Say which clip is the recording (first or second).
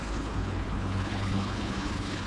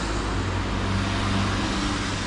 second